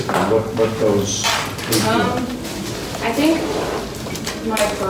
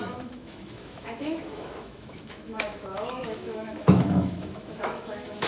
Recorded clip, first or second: first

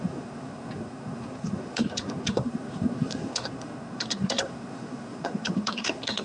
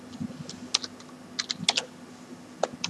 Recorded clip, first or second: second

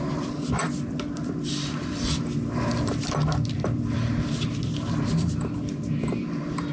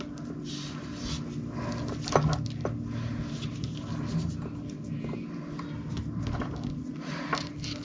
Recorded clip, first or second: second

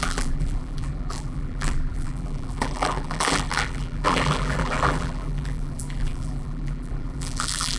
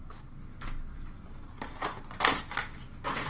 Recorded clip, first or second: second